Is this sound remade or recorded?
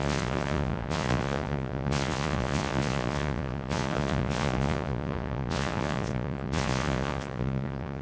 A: remade